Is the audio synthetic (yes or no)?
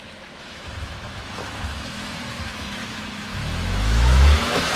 yes